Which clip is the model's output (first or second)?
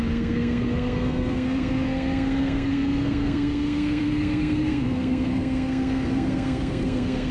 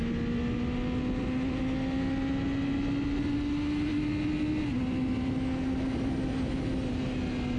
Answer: first